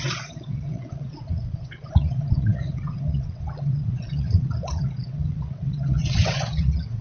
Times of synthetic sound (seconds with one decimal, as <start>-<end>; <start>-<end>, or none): 0.0-7.0